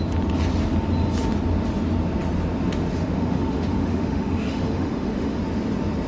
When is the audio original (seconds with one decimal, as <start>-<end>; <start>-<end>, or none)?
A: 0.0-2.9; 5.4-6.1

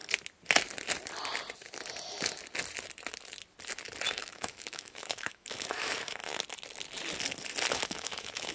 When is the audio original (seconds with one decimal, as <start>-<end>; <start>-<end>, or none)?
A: 0.0-4.1; 6.2-7.7

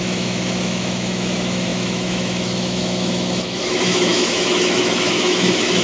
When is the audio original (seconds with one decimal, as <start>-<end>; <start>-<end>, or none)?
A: none

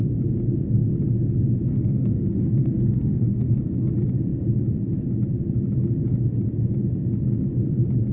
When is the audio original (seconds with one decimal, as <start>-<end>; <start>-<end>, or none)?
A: 0.0-1.7; 3.6-8.1

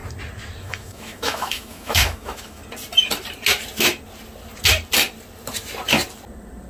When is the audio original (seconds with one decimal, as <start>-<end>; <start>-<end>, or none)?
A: 0.0-0.6; 2.6-6.7